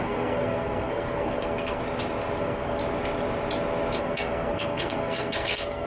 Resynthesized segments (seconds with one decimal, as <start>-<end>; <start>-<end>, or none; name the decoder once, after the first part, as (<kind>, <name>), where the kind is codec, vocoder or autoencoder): 0.0-1.8 (codec, SNAC); 2.4-2.8; 4.0-5.9